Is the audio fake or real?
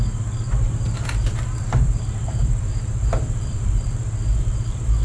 fake